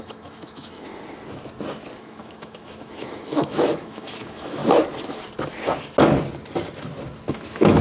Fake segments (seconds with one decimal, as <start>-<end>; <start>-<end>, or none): 0.0-0.9; 2.0-4.6; 7.3-7.8

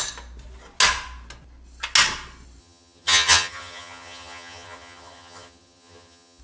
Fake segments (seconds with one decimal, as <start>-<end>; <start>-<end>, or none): 2.6-6.4

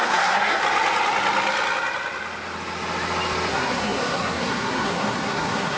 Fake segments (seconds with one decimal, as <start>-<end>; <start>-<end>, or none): 0.0-0.6; 3.5-5.8

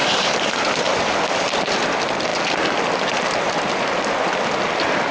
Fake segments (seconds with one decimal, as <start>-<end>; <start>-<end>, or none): 0.0-1.0

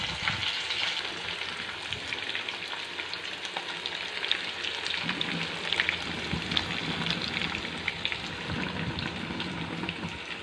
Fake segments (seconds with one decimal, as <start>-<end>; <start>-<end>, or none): none

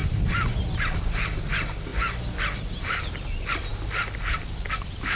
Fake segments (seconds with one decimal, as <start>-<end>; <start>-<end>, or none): none

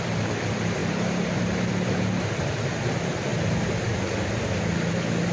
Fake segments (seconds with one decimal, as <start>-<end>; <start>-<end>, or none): 0.8-1.4

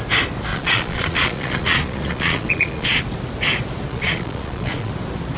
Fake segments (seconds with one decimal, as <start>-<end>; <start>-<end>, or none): 0.5-3.0; 3.9-4.9